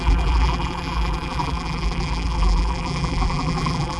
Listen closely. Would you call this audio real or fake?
fake